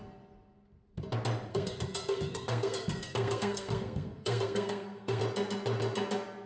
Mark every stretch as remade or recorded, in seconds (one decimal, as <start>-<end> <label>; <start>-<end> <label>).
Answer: 0.0-1.5 recorded; 1.5-5.2 remade; 5.2-6.5 recorded